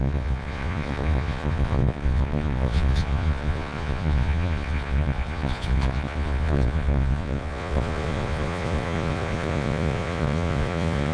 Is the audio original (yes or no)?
no